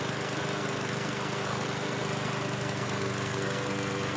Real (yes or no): no